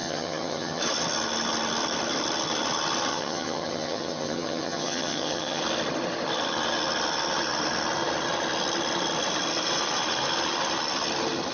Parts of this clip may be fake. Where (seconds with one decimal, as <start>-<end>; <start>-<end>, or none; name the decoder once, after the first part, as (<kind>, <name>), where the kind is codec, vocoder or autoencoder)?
0.0-0.8 (vocoder, HiFi-GAN); 3.1-5.6